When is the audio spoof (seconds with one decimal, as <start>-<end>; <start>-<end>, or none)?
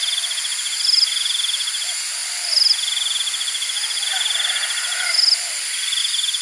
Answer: none